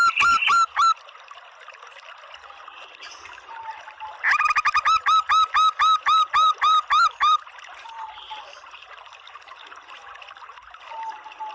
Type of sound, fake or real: real